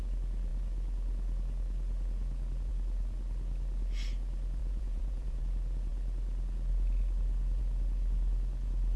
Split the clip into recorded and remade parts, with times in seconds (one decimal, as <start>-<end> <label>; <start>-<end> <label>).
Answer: 0.0-4.6 recorded; 4.6-5.4 remade; 5.4-9.0 recorded